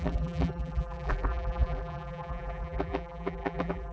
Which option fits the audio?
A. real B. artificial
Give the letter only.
B